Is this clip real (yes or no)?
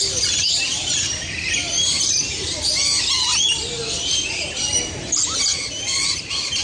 no